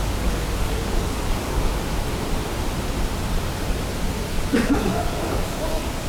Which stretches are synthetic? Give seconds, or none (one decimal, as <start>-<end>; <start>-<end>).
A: 0.0-1.7; 4.3-6.1

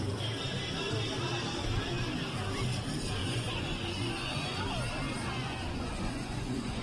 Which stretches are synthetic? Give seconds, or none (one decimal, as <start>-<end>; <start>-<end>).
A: 3.2-4.6; 5.4-6.8

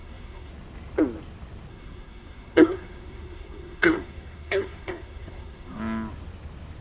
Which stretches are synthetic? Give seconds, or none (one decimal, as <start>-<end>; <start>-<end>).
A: 0.0-0.5; 1.7-5.8

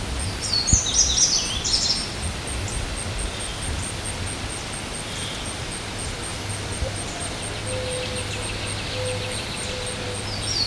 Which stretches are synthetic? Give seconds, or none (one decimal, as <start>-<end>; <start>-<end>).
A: 6.3-7.4

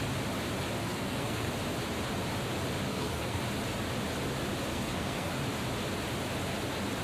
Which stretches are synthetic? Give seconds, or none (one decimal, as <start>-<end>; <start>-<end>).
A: 0.8-1.5; 2.9-3.4; 4.7-5.3